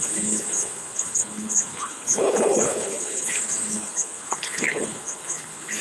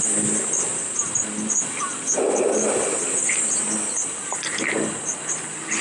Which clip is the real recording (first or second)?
second